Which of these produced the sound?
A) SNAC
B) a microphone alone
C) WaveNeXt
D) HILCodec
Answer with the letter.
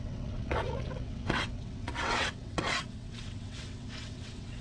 C